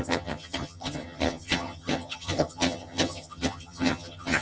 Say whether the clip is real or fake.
fake